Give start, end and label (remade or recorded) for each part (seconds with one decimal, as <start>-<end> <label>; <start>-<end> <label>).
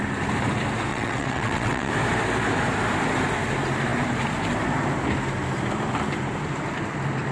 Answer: 0.0-0.9 recorded; 0.9-1.9 remade; 1.9-7.3 recorded